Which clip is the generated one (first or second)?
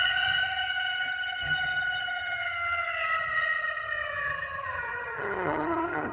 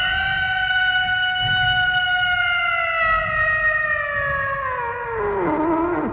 first